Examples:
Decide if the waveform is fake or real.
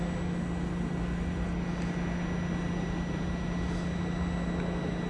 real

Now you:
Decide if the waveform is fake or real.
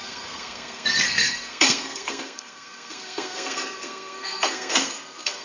fake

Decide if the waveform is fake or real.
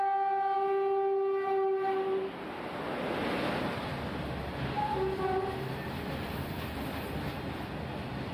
real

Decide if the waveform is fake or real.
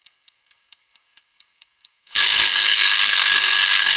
fake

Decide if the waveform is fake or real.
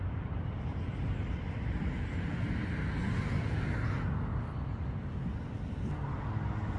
real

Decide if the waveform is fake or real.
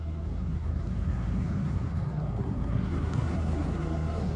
fake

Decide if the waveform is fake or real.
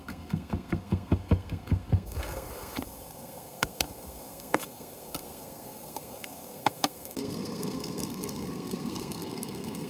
fake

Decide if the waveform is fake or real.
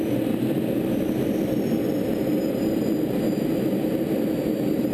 real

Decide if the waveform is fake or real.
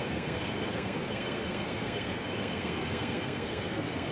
fake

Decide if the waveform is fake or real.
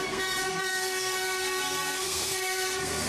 fake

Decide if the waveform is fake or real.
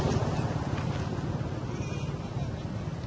real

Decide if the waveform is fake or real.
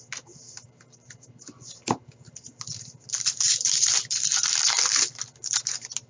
real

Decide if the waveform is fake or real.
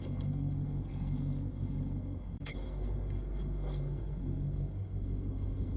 fake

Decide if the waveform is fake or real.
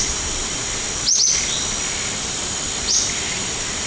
real